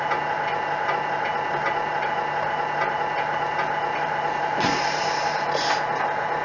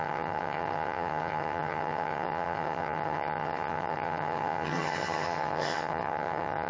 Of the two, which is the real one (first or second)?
first